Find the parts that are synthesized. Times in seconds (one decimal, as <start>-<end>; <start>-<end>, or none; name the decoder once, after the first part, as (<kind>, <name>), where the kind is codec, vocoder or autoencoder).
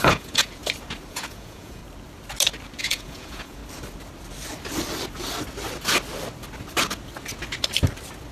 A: 0.0-0.6 (vocoder, Vocos); 1.1-1.8; 2.8-3.6